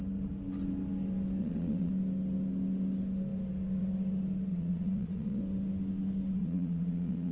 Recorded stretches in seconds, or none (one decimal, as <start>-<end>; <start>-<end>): 0.0-1.4; 1.9-4.5; 5.4-6.4